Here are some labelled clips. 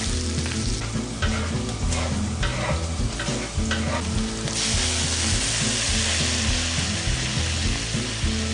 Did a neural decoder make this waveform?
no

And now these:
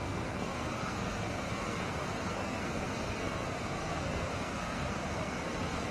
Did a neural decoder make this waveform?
yes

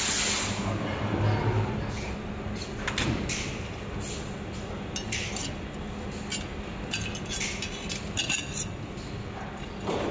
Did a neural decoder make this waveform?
no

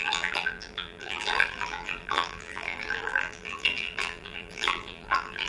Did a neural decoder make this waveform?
yes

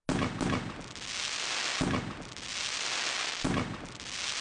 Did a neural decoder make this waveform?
no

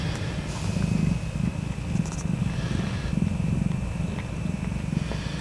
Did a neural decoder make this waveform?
no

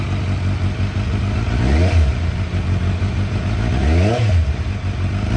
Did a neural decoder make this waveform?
no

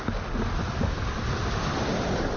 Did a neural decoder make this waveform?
no